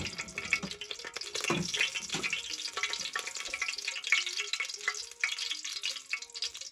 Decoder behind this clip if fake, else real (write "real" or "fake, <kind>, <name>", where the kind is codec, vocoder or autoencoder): real